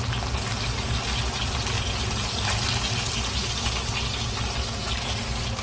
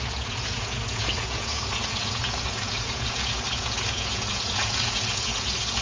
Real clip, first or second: first